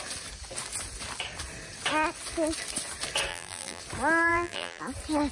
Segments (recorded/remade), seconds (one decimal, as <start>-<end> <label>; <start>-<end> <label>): 0.0-3.3 recorded; 3.3-3.8 remade; 3.8-4.3 recorded; 4.3-4.8 remade; 4.8-5.3 recorded

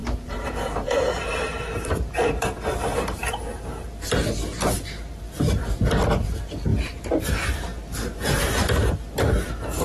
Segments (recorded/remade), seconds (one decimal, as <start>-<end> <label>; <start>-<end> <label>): 0.0-3.9 remade; 3.9-9.8 recorded

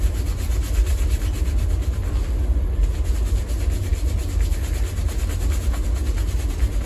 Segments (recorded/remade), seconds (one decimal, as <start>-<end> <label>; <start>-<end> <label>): 0.0-6.9 recorded

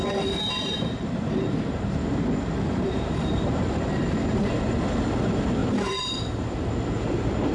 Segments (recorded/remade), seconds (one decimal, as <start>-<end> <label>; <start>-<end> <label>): 0.0-0.6 recorded; 0.6-4.5 remade; 4.5-5.6 recorded; 5.6-6.2 remade; 6.2-7.5 recorded

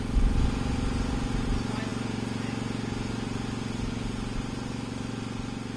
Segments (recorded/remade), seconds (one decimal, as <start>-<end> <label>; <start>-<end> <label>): 0.0-5.8 recorded